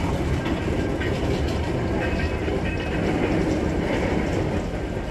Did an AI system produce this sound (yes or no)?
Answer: no